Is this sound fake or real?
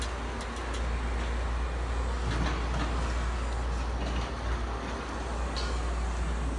real